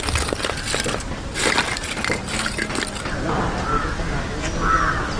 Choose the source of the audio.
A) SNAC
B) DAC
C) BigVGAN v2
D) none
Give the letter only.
D